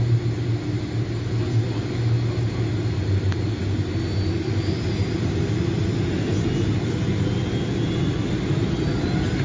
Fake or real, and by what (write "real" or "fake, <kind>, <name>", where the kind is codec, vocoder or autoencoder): real